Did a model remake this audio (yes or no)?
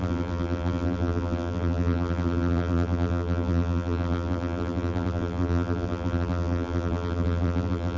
yes